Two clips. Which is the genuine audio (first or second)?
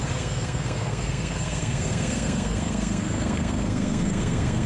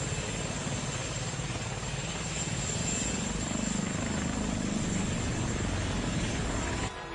second